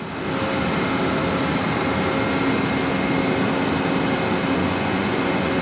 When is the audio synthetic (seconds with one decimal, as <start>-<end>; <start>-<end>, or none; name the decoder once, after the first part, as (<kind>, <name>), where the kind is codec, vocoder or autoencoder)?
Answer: 4.6-5.6 (vocoder, Vocos)